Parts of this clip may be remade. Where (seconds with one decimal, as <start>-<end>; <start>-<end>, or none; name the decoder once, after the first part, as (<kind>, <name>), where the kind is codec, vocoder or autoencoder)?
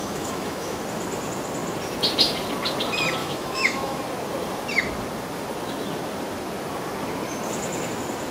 0.0-0.8 (autoencoder, DAC-VAE); 3.2-4.0